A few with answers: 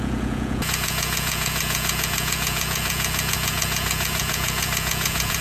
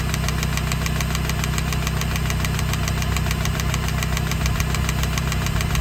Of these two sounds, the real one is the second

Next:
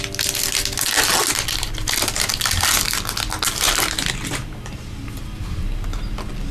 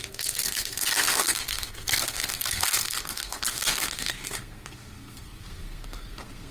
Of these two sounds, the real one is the first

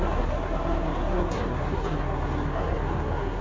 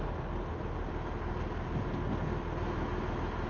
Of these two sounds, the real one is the second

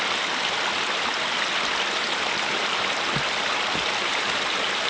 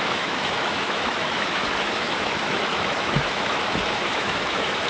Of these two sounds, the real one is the first